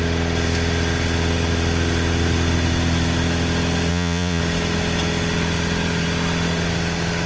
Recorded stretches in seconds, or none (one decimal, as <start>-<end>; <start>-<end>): 0.0-3.9; 4.4-7.3